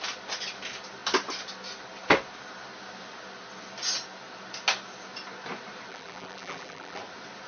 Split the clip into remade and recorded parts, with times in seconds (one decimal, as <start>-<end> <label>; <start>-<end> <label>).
0.0-5.9 recorded; 5.9-7.0 remade; 7.0-7.5 recorded